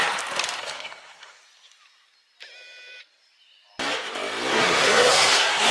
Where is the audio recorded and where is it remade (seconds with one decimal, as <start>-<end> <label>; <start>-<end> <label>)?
0.0-0.6 recorded; 0.6-1.4 remade; 1.4-4.5 recorded; 4.5-5.7 remade